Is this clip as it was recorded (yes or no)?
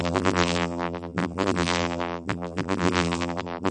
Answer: no